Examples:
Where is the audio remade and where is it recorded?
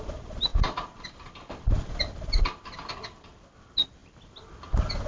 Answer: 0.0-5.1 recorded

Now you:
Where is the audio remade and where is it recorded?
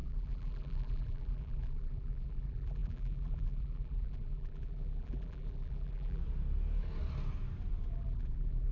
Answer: 0.0-6.2 remade; 6.2-7.9 recorded; 7.9-8.7 remade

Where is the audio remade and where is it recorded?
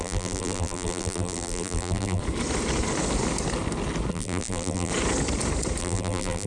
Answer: 0.0-2.2 remade; 2.2-4.1 recorded; 4.1-4.9 remade; 4.9-5.8 recorded; 5.8-6.5 remade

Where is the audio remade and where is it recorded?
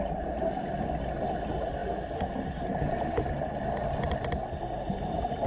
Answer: 0.0-5.5 recorded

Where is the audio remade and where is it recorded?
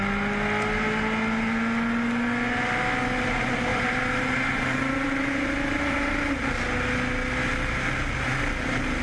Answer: 0.0-3.7 recorded; 3.7-6.4 remade; 6.4-9.0 recorded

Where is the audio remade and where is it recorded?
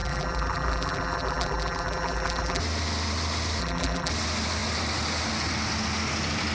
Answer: 0.0-2.6 remade; 2.6-3.6 recorded; 3.6-4.1 remade; 4.1-6.5 recorded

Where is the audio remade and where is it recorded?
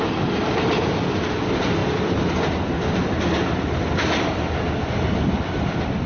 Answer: 0.0-6.1 recorded